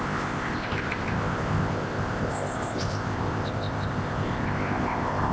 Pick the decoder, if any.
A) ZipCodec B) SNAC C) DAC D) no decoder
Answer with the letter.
A